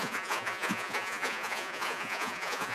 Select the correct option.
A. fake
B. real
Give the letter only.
A